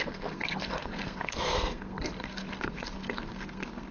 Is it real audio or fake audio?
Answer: fake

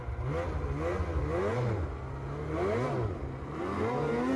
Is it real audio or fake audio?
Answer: real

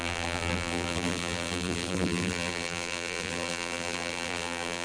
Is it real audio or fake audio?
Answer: fake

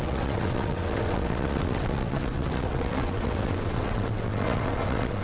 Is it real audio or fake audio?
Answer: fake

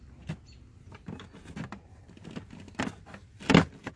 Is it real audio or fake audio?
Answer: real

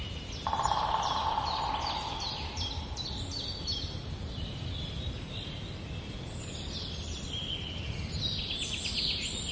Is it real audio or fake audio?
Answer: real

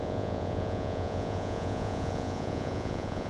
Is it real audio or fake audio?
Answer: fake